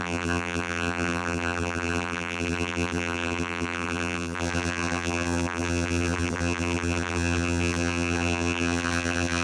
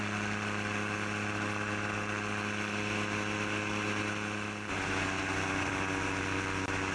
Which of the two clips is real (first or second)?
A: second